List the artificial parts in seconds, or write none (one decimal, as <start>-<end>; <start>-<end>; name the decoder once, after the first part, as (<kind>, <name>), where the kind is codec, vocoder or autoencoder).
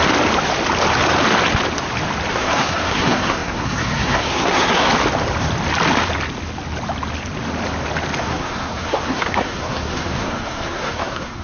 2.3-4.9 (codec, SNAC); 8.2-11.4